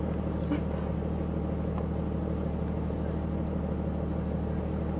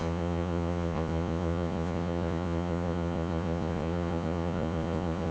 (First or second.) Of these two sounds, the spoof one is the second